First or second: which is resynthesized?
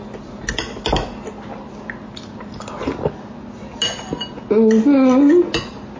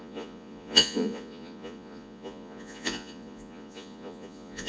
second